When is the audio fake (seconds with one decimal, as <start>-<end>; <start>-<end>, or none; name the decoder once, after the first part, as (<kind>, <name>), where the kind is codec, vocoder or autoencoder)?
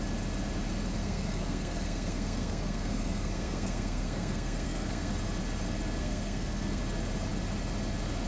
1.0-5.1 (codec, SNAC); 6.0-6.8